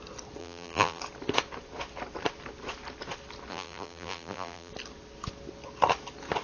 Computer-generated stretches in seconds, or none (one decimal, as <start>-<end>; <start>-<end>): 0.4-1.0; 3.5-4.7